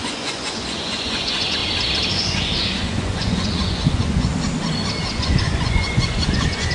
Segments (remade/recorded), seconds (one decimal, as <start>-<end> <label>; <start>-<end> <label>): 0.0-1.6 remade; 1.6-2.1 recorded; 2.1-4.3 remade; 4.3-5.0 recorded; 5.0-6.7 remade